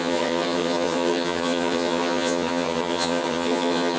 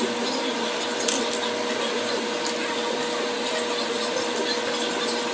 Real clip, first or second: second